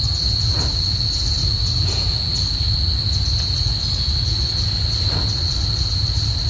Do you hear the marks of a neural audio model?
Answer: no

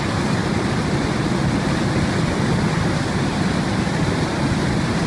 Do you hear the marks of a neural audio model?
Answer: no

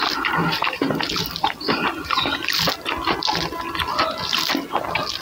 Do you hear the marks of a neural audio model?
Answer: no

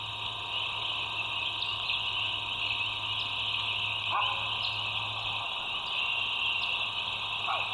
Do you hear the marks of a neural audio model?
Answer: no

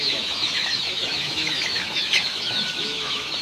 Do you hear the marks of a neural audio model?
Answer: yes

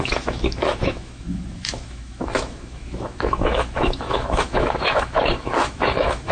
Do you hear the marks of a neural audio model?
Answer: yes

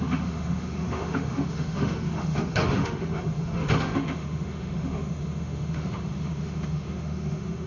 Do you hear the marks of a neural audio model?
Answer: yes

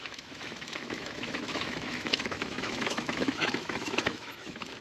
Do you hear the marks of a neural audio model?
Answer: yes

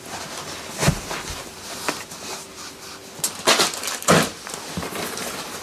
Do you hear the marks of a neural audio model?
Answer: no